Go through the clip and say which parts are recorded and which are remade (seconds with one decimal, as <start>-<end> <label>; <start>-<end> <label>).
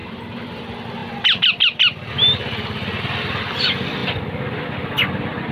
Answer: 0.0-0.6 remade; 0.6-5.5 recorded